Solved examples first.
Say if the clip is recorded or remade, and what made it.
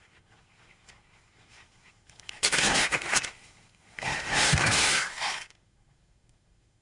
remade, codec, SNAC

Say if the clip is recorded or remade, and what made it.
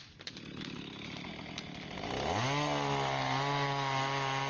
recorded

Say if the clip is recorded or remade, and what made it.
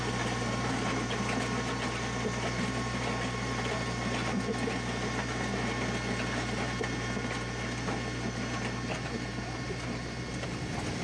recorded